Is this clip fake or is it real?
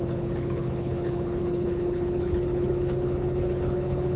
fake